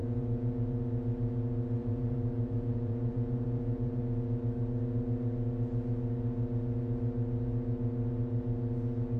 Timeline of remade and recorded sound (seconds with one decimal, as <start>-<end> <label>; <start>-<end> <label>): 0.0-0.8 remade; 0.8-1.8 recorded; 1.8-4.0 remade; 4.0-9.2 recorded